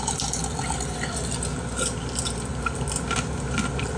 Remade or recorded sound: recorded